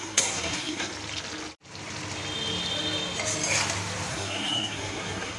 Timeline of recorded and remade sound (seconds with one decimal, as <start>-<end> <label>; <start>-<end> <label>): 0.0-0.9 remade; 0.9-4.1 recorded; 4.1-5.4 remade